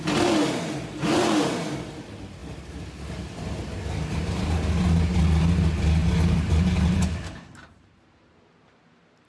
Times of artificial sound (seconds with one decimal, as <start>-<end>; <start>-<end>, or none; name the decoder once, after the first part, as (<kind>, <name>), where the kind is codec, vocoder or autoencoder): 6.0-8.8 (vocoder, BigVGAN v2)